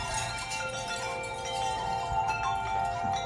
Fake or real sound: fake